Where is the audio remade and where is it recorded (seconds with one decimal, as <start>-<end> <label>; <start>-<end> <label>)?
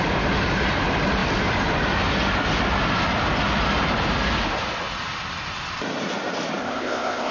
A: 0.0-6.6 recorded; 6.6-7.3 remade